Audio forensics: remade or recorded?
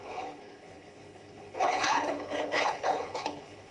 remade